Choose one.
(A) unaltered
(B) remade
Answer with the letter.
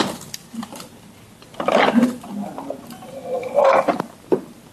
A